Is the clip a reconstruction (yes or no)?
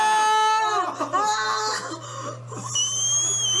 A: no